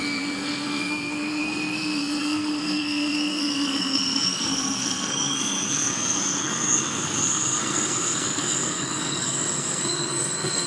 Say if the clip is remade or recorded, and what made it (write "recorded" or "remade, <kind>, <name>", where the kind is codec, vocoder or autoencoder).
remade, codec, SNAC